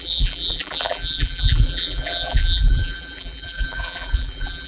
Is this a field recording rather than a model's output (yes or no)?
no